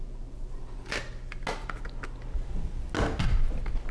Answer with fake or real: real